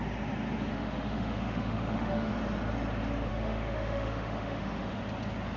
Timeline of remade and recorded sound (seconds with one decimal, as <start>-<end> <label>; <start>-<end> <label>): 0.0-0.7 recorded; 0.7-2.3 remade; 2.3-3.3 recorded; 3.3-5.0 remade; 5.0-5.6 recorded